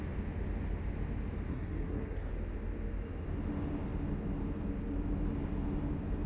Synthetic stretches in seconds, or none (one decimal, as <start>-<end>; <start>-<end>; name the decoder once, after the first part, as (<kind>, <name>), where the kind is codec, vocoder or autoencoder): 1.5-2.3 (codec, SNAC)